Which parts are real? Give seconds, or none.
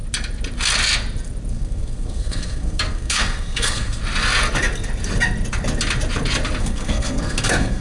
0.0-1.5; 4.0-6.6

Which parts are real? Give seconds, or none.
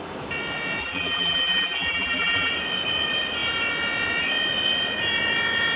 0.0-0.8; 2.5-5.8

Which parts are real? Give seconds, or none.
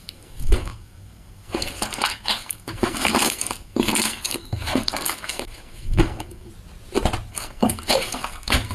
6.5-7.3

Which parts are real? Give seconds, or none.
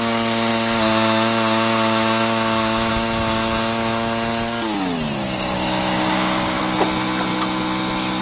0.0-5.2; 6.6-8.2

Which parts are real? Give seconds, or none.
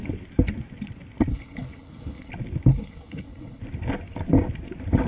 0.0-1.3; 2.3-2.7; 3.6-5.1